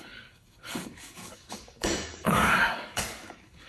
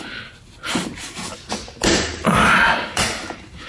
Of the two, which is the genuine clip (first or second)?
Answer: second